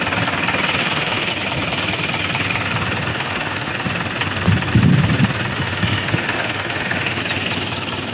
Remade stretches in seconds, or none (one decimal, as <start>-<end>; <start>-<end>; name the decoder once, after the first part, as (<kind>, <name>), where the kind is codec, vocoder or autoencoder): 0.8-1.3 (autoencoder, DAC-VAE); 3.1-3.7; 5.5-7.2

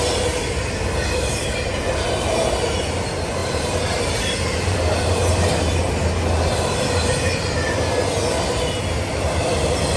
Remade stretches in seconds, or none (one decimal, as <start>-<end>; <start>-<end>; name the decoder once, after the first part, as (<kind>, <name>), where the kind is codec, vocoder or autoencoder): 3.4-4.8 (vocoder, BigVGAN v2)

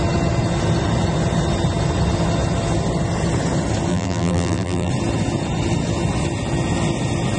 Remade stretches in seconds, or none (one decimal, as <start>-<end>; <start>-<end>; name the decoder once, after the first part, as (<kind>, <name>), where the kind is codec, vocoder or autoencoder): 3.9-4.9 (vocoder, BigVGAN v2)

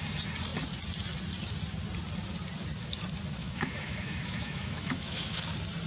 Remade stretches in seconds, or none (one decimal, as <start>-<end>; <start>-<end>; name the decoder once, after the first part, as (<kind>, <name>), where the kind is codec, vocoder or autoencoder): 3.4-5.4 (autoencoder, DAC-VAE)